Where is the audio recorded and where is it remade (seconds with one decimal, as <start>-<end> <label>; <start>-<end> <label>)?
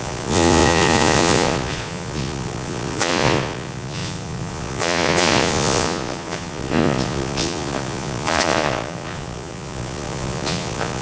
0.0-11.0 remade